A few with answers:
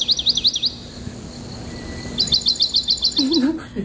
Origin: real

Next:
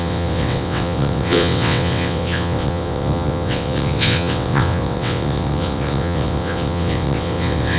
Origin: fake